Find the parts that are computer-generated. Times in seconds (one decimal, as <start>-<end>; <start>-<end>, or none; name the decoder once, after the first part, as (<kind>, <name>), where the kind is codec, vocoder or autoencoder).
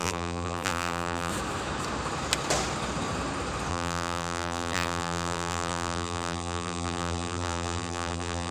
0.0-1.3 (vocoder, BigVGAN v2); 3.7-8.5